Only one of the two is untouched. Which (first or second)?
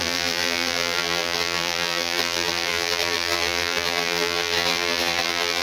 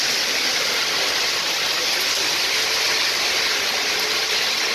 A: second